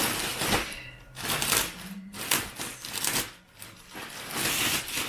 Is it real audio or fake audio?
real